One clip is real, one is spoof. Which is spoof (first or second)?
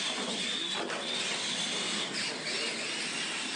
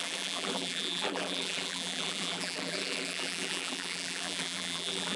second